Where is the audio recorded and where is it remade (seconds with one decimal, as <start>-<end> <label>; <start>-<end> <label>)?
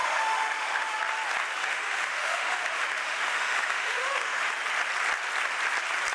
0.0-1.0 remade; 1.0-1.6 recorded; 1.6-4.5 remade; 4.5-6.1 recorded